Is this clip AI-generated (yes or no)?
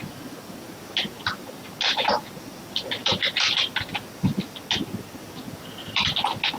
no